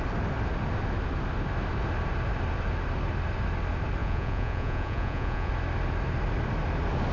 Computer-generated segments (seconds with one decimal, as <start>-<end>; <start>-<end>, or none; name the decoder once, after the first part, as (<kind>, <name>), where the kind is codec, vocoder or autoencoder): 4.0-5.5 (vocoder, Vocos)

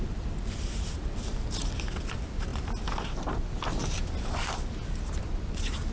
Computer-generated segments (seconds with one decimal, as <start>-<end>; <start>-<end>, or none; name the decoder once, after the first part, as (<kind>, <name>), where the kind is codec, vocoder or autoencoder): none

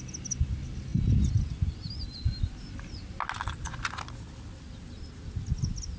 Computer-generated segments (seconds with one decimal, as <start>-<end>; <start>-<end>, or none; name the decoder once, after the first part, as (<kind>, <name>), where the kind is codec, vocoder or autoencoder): none

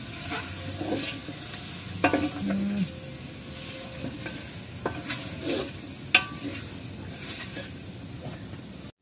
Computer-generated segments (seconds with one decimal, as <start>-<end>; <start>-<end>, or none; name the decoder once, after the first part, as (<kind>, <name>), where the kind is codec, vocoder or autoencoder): none

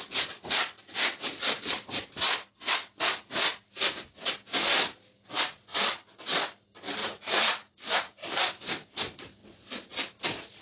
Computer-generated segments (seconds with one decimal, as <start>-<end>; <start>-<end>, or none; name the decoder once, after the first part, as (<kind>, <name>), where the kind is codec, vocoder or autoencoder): 7.0-8.1 (vocoder, Vocos)

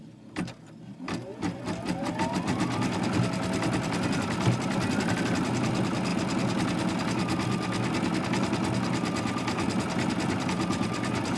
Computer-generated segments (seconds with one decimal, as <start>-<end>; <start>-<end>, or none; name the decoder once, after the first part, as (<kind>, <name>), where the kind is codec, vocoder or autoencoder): none

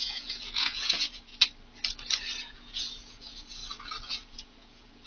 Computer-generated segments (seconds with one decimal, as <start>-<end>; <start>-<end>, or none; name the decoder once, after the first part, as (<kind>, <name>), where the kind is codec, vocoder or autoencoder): 0.0-1.3 (vocoder, Vocos); 2.4-3.6; 4.1-5.1

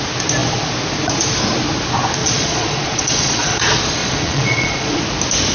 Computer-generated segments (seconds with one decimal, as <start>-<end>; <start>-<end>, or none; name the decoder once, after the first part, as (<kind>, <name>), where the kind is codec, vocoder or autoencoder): 2.2-3.6 (vocoder, Vocos); 4.0-5.0